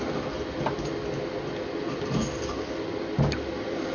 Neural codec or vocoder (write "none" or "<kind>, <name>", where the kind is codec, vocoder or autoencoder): none